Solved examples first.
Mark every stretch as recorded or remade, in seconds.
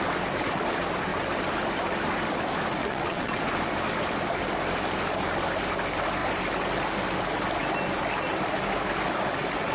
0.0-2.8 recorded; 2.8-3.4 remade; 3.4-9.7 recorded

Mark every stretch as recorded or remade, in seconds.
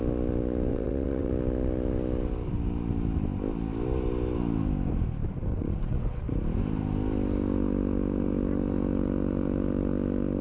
0.0-0.7 recorded; 0.7-1.3 remade; 1.3-5.5 recorded; 5.5-6.3 remade; 6.3-10.4 recorded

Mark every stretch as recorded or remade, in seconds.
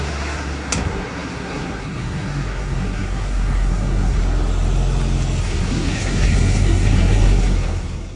0.0-4.2 remade; 4.2-5.4 recorded; 5.4-8.2 remade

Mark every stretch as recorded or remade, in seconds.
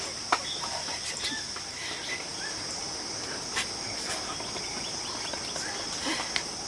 0.0-6.7 recorded